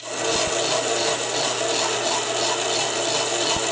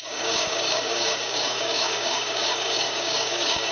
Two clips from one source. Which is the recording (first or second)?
first